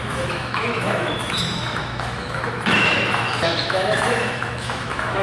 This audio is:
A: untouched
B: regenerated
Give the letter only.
B